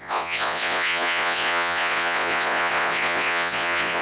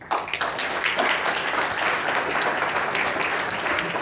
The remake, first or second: first